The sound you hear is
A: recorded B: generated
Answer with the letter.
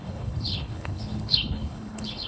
B